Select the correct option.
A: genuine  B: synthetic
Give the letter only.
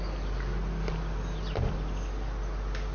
A